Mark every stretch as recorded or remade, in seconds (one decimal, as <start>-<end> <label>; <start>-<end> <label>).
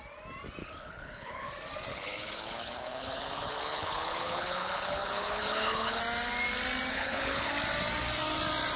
0.0-0.6 recorded; 0.6-1.5 remade; 1.5-1.9 recorded; 1.9-6.0 remade; 6.0-6.9 recorded; 6.9-7.5 remade; 7.5-8.8 recorded